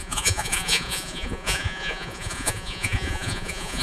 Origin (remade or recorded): remade